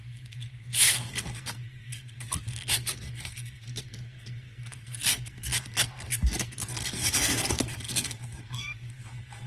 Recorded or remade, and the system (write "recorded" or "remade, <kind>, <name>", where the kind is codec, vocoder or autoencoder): remade, codec, SNAC